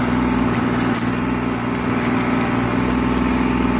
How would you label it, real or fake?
real